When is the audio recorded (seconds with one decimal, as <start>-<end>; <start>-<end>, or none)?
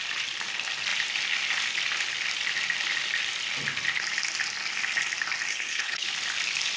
0.0-5.5; 6.1-6.8